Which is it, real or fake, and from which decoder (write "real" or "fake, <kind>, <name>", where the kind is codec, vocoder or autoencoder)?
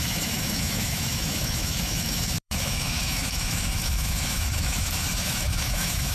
fake, autoencoder, DAC-VAE